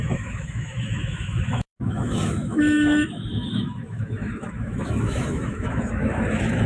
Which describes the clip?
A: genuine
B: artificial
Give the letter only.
B